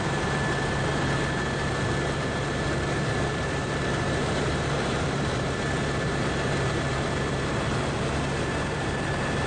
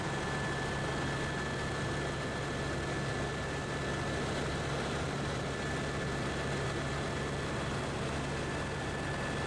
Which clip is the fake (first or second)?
first